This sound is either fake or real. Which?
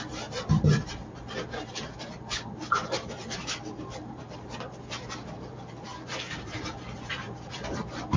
fake